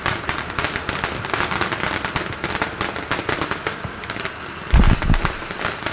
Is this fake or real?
real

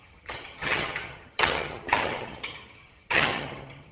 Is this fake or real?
fake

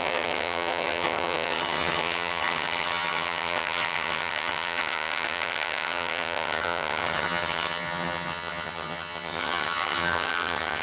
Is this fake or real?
fake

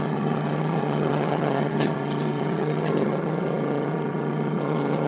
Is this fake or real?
fake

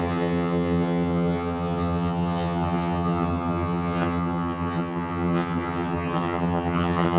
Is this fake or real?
fake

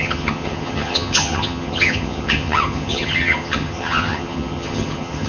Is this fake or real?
fake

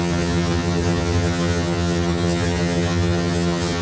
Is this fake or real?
fake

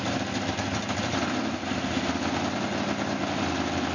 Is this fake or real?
real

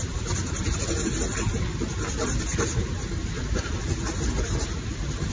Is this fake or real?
real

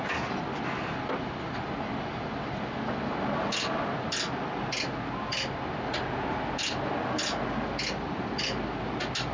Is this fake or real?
real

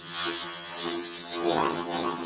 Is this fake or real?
fake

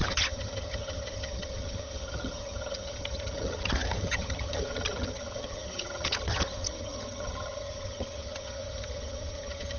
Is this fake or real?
fake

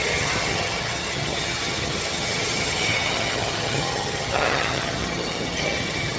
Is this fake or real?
fake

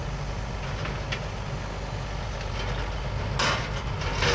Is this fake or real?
real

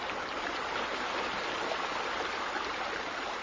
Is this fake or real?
real